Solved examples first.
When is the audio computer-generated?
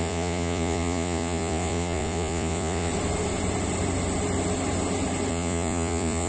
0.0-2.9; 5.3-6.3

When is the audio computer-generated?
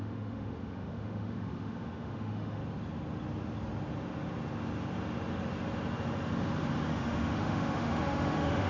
0.0-2.6; 6.9-8.7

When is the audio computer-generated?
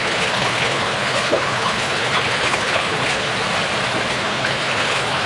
0.0-3.3; 4.1-5.3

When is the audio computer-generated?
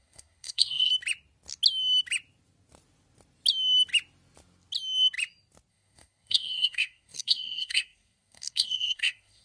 0.0-0.9; 5.7-9.4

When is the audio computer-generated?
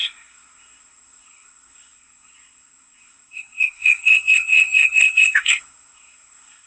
0.0-6.7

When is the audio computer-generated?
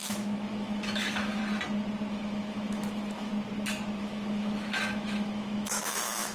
0.0-1.4; 2.1-3.3; 4.0-6.3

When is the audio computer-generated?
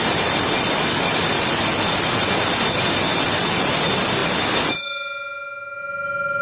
none